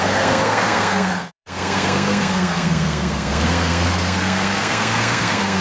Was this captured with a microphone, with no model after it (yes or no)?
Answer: no